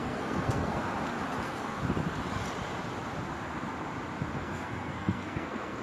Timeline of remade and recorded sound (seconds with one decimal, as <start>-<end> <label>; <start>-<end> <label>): 0.0-0.9 remade; 0.9-1.4 recorded; 1.4-1.8 remade; 1.8-4.3 recorded; 4.3-5.8 remade